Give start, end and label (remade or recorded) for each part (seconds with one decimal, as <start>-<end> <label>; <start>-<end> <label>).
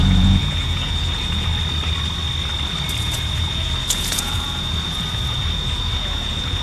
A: 0.0-1.5 remade; 1.5-3.0 recorded; 3.0-6.6 remade